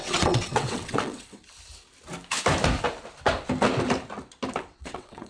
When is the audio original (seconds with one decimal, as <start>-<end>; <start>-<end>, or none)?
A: 1.4-4.6